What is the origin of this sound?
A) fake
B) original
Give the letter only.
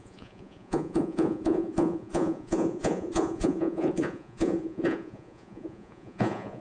A